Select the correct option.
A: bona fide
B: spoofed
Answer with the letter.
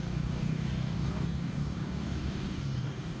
B